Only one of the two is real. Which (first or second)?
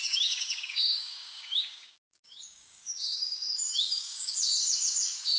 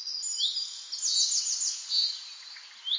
second